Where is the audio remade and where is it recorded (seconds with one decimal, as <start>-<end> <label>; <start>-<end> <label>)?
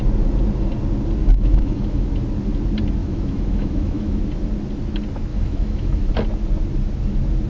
0.0-1.2 recorded; 1.2-2.1 remade; 2.1-3.0 recorded; 3.0-4.2 remade; 4.2-5.3 recorded; 5.3-6.1 remade; 6.1-7.5 recorded